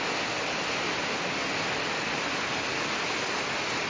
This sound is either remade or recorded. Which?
recorded